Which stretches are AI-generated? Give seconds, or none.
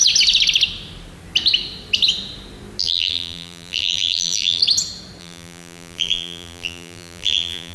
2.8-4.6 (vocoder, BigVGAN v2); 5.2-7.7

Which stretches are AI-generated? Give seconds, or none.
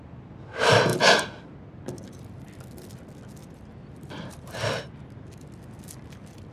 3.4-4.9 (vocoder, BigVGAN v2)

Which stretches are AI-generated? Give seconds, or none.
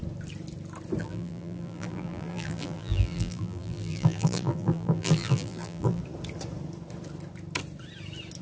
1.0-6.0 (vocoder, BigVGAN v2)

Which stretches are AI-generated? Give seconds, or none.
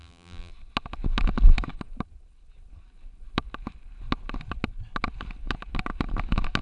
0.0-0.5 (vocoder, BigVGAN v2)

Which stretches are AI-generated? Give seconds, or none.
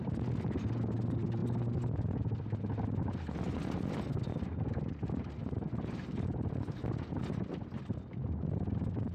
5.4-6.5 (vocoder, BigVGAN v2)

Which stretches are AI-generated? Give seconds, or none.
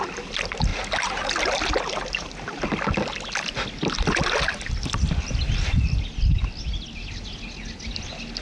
none